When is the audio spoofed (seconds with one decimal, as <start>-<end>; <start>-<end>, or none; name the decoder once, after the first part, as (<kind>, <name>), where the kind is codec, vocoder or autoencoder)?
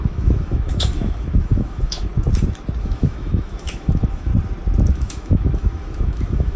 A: 0.0-2.1 (autoencoder, DAC-VAE); 2.8-4.3; 4.9-6.6